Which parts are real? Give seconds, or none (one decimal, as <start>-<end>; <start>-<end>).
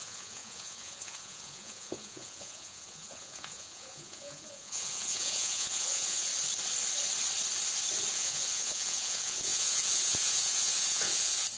6.3-8.1